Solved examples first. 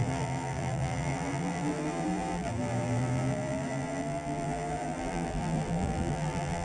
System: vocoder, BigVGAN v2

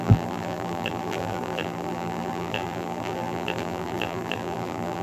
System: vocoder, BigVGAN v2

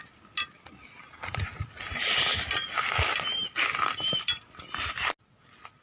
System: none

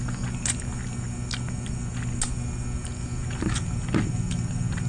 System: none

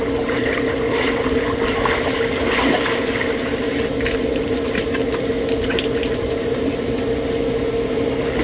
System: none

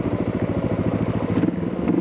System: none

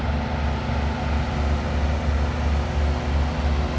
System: none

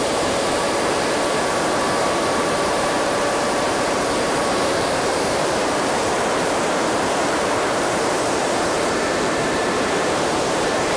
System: vocoder, BigVGAN v2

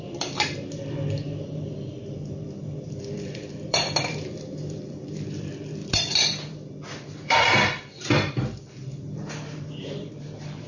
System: vocoder, BigVGAN v2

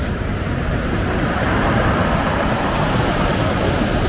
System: vocoder, BigVGAN v2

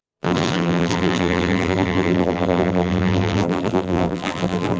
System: vocoder, BigVGAN v2